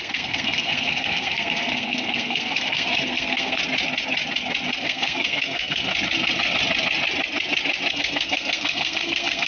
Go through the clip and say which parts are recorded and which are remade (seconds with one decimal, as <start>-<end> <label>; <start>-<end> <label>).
0.0-3.6 remade; 3.6-4.8 recorded; 4.8-5.9 remade; 5.9-7.9 recorded; 7.9-9.5 remade